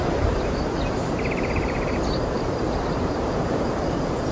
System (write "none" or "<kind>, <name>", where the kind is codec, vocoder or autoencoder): vocoder, BigVGAN v2